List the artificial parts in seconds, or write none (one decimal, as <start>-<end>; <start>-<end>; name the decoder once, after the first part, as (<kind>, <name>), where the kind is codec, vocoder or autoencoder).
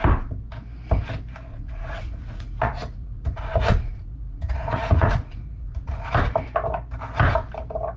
1.5-6.1 (vocoder, Vocos)